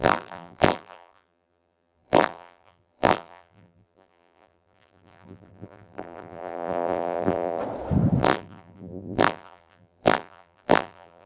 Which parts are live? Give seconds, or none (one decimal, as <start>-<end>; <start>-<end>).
7.6-8.2